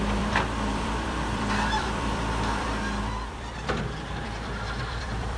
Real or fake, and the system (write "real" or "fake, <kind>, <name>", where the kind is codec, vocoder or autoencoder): fake, vocoder, BigVGAN v2